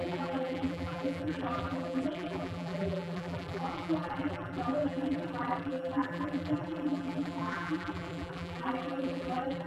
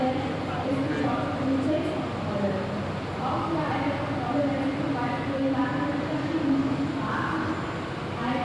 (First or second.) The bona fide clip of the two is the second